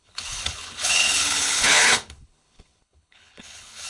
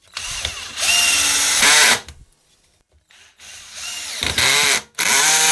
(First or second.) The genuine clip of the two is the second